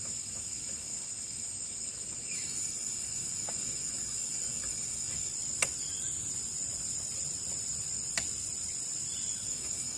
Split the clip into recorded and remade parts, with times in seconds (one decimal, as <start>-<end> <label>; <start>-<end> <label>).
0.0-5.3 remade; 5.3-9.5 recorded; 9.5-10.0 remade